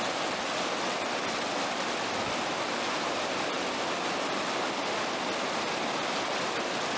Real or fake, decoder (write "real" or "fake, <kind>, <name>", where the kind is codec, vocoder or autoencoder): real